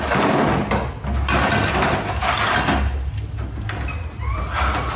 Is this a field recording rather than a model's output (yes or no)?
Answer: yes